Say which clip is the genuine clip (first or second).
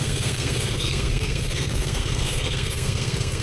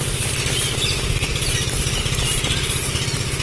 second